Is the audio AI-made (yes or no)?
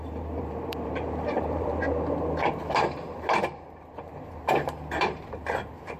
yes